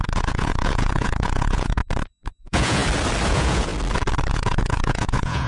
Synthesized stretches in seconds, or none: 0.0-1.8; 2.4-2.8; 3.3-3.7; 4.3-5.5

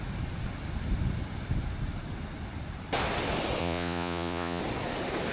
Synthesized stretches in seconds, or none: 3.6-4.6

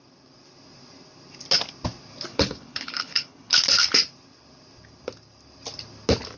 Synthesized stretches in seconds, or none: 2.3-3.6

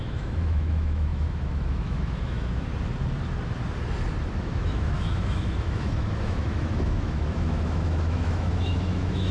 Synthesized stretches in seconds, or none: 0.0-2.7; 4.4-9.3

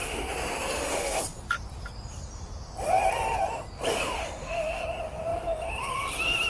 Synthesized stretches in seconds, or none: 0.0-1.2; 3.9-4.8

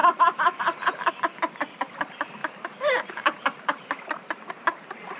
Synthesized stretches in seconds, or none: 0.0-1.1; 2.4-4.5

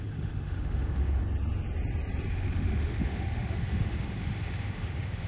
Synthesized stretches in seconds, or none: 0.0-1.2; 2.3-5.3

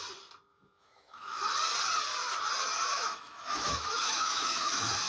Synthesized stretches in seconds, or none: 0.5-1.4; 2.9-5.1